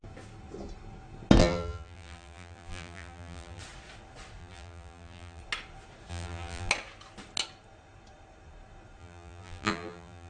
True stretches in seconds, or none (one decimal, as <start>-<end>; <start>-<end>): 0.0-1.4; 3.6-4.4; 5.4-6.1; 6.7-9.0